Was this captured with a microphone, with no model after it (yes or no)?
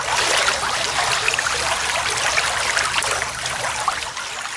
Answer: yes